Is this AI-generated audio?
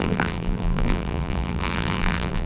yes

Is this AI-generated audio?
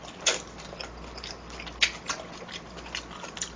no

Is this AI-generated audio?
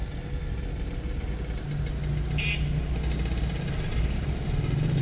no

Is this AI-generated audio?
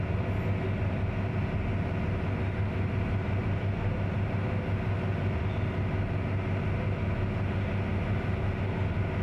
no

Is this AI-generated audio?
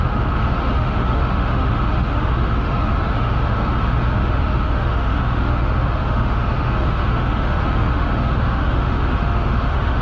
yes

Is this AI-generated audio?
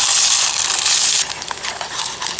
no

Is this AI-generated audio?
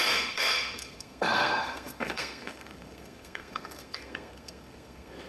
yes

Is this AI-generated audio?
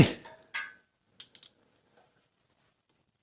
no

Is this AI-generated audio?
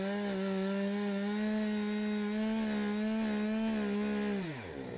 no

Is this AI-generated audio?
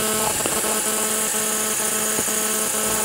no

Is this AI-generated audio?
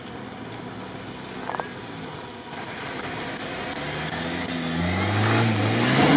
no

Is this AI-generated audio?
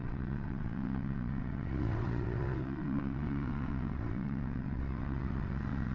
yes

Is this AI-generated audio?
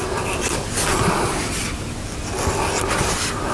no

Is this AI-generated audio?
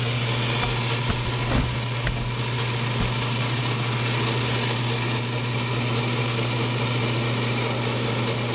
no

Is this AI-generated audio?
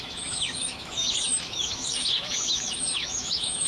yes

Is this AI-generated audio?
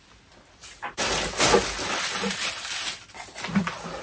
no